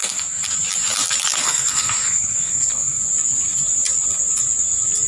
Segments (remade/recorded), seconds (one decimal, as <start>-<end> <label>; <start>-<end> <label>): 0.0-0.5 remade; 0.5-1.4 recorded; 1.4-3.0 remade; 3.0-5.1 recorded